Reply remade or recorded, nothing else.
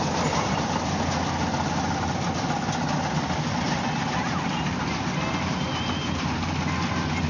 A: recorded